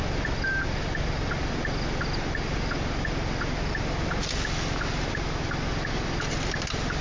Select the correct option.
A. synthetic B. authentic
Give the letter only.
B